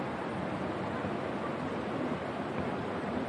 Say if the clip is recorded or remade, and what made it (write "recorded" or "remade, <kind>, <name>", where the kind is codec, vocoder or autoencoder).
recorded